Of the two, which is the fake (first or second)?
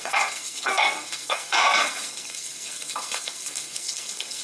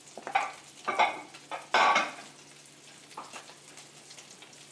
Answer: first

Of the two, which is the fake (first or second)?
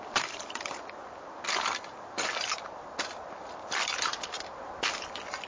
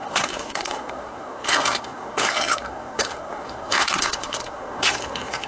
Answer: second